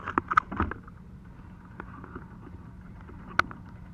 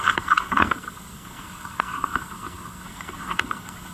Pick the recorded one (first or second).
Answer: first